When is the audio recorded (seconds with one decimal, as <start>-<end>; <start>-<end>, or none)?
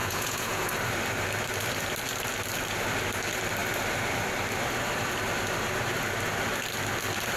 0.7-7.4